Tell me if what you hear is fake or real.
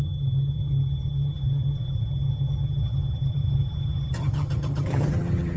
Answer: fake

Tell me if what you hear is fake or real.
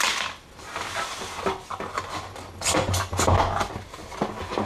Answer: real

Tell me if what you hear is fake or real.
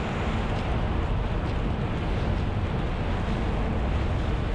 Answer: real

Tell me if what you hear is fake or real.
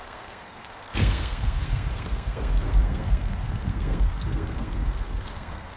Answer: fake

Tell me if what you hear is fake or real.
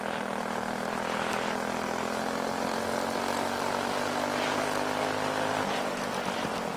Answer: real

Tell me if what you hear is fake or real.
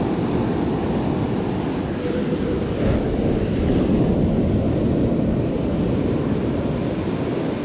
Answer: real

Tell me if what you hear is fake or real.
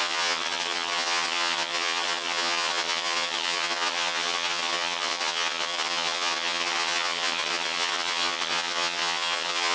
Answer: fake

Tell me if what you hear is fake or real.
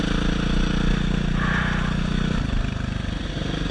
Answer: real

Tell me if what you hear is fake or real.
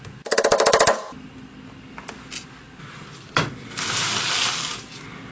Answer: real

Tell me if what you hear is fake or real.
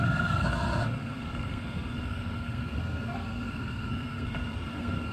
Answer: fake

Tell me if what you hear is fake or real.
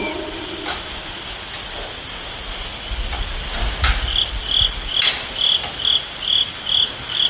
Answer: real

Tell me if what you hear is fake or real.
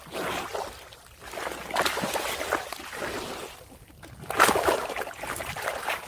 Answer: real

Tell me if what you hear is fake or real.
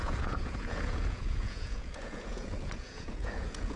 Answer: fake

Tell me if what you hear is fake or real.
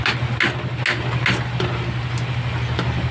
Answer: real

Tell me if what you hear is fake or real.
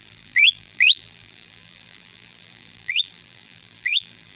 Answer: fake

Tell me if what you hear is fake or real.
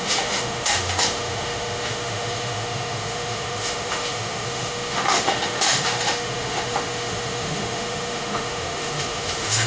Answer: fake